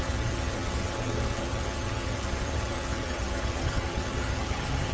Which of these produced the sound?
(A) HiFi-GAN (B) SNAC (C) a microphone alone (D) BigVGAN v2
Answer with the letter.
A